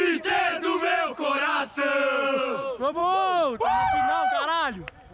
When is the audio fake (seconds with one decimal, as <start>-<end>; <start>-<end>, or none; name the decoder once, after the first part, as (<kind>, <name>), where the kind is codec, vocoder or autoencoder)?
none

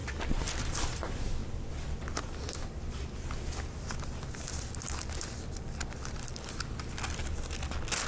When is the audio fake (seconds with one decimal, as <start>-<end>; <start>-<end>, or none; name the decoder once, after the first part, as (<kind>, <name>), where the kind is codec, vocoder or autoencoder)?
0.8-1.4 (vocoder, BigVGAN v2); 6.2-7.2

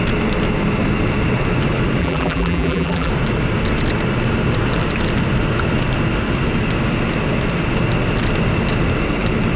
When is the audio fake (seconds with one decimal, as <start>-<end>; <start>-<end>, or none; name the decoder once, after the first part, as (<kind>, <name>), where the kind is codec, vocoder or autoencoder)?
2.0-3.1 (vocoder, BigVGAN v2)

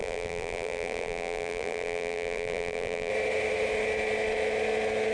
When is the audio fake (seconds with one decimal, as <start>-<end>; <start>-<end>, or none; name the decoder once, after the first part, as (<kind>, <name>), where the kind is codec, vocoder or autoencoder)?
0.0-3.1 (vocoder, BigVGAN v2)

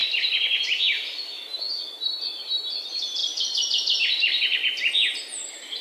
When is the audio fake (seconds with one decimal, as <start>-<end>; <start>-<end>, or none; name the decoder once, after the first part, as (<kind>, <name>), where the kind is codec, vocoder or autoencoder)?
2.7-4.6 (vocoder, BigVGAN v2); 5.1-5.8

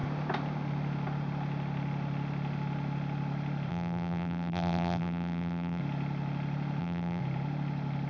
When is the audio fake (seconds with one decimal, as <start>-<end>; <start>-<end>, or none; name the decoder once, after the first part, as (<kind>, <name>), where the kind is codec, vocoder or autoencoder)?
3.7-5.8 (vocoder, BigVGAN v2); 6.8-7.2

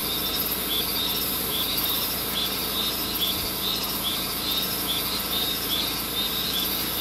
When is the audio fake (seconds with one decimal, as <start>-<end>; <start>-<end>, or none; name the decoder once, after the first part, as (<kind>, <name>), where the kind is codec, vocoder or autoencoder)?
1.2-2.6 (vocoder, BigVGAN v2); 6.3-7.0